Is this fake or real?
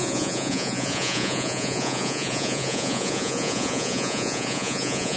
fake